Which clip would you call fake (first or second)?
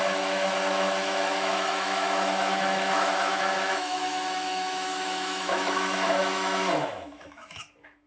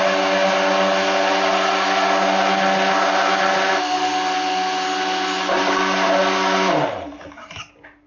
first